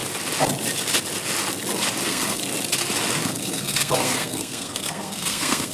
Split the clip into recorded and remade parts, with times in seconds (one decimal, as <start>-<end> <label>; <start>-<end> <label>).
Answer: 0.0-2.0 recorded; 2.0-2.4 remade; 2.4-3.1 recorded; 3.1-5.7 remade